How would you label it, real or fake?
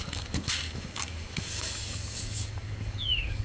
fake